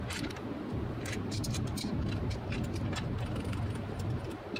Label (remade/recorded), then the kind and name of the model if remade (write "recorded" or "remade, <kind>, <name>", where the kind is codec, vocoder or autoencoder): remade, vocoder, BigVGAN v2